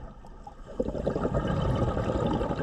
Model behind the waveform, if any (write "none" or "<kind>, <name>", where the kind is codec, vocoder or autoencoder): none